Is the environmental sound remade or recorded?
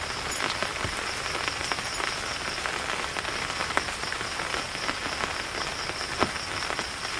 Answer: recorded